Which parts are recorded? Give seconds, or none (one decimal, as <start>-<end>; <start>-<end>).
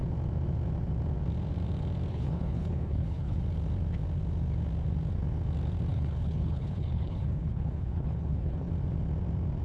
0.0-2.1; 3.4-5.9; 8.7-9.6